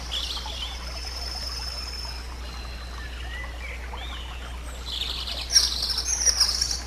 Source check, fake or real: real